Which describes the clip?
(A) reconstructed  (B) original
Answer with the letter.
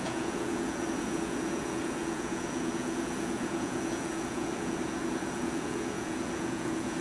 A